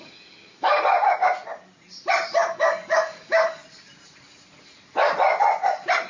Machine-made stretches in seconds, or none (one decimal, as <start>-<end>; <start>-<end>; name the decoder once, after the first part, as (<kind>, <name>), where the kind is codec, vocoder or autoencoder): 0.0-0.7 (codec, DAC); 2.5-3.6